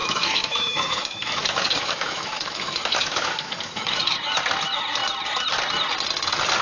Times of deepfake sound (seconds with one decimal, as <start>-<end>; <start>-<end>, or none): 0.0-4.0

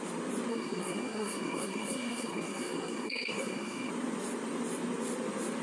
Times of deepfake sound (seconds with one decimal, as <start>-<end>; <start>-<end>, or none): 0.5-3.9

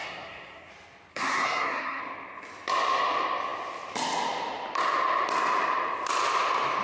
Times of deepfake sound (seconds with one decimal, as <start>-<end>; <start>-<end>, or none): 0.0-0.7; 1.1-2.0

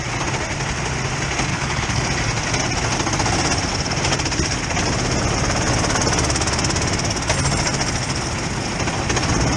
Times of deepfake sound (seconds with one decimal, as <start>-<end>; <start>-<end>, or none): 1.5-2.0

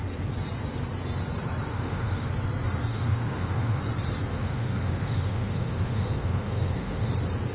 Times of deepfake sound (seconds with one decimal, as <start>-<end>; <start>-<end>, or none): 1.7-2.3; 2.9-3.8; 4.3-7.1

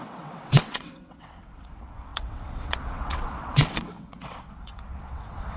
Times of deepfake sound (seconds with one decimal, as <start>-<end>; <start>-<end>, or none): 0.0-5.6

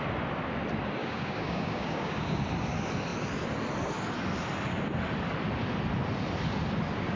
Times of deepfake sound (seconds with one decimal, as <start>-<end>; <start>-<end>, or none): 1.0-2.4

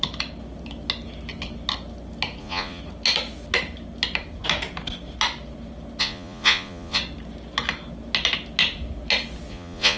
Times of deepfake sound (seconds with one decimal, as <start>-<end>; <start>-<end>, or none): 2.4-2.8; 6.0-7.0; 9.5-10.0